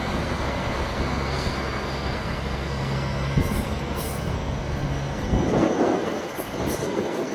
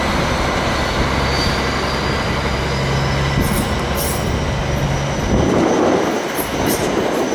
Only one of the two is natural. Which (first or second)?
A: second